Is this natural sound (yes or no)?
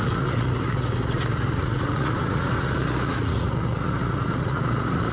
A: no